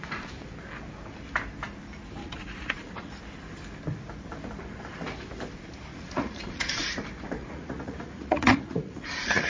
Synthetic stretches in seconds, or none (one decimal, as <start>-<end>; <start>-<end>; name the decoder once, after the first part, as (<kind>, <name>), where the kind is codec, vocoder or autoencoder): 2.2-3.1 (vocoder, Vocos); 5.9-7.0; 7.4-9.5